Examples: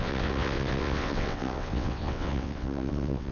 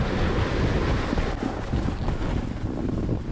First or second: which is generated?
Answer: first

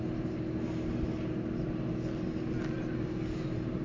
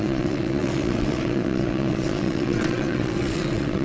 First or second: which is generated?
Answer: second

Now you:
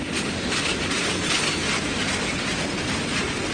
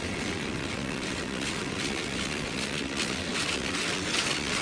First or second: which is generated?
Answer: second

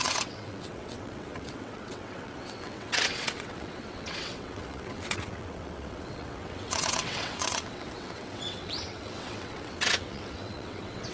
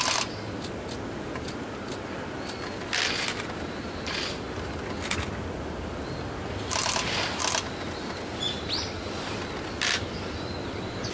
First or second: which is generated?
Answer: first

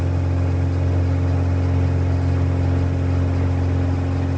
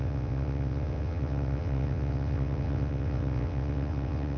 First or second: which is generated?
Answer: second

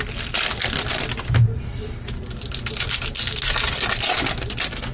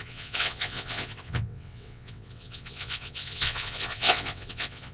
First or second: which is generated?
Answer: second